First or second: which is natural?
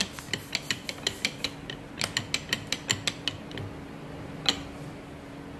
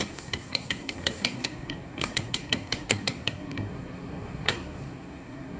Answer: first